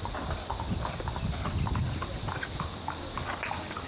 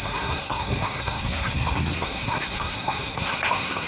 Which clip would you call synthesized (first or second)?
second